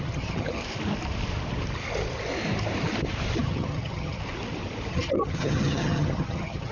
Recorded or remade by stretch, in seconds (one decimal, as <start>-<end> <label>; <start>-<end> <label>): 0.0-0.6 remade; 0.6-3.4 recorded; 3.4-4.2 remade; 4.2-4.9 recorded; 4.9-6.7 remade